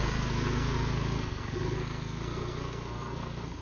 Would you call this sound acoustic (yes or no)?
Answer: no